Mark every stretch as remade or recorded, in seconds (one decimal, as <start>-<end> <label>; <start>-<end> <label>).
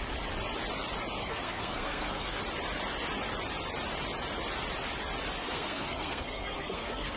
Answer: 0.0-1.2 recorded; 1.2-2.4 remade; 2.4-5.4 recorded; 5.4-7.2 remade